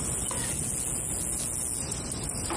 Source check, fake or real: real